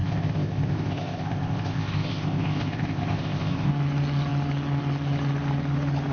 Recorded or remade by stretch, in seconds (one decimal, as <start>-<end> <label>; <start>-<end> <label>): 0.0-3.7 remade; 3.7-6.1 recorded